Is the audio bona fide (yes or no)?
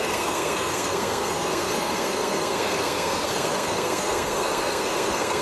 no